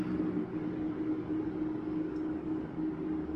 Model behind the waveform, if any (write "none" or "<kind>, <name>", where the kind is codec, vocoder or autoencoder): codec, DAC